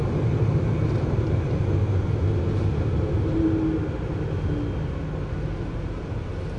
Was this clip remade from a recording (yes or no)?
no